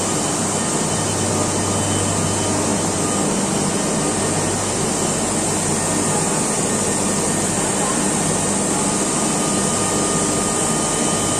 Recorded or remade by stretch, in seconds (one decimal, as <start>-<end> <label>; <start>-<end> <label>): 0.0-11.4 recorded